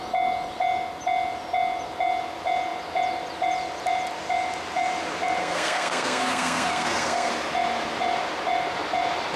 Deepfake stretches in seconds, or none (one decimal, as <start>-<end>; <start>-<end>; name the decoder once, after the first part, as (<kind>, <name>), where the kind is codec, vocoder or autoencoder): 5.4-7.3 (codec, SNAC)